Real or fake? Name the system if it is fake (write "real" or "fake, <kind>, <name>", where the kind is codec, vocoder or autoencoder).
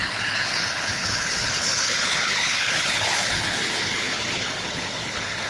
fake, codec, HILCodec